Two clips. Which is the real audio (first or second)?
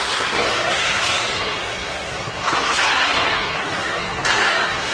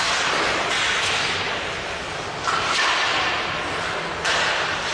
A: second